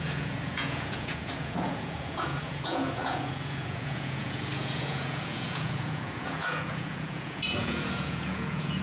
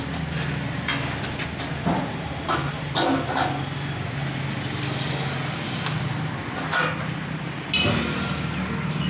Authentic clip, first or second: second